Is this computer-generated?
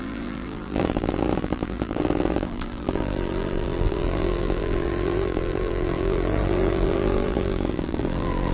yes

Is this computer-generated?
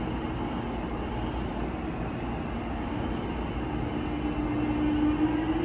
no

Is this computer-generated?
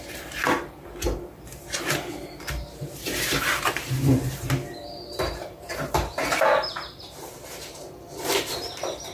yes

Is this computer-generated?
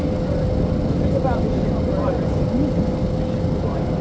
no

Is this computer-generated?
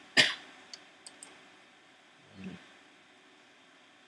no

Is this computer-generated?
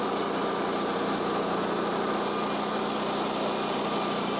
no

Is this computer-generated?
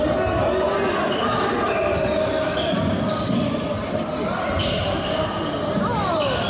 no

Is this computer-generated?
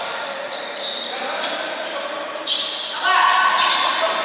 no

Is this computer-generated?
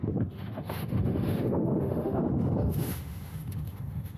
yes